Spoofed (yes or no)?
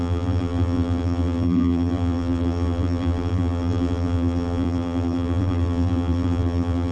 yes